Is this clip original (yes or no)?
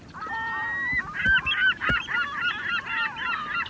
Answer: yes